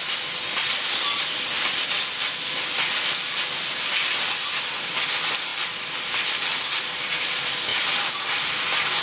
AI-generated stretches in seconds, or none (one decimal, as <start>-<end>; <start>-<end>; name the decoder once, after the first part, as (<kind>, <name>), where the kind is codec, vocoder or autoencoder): 0.0-1.1 (vocoder, BigVGAN v2); 3.7-9.0